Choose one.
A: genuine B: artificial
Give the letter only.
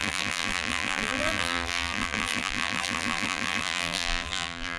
B